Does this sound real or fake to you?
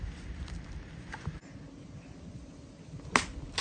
real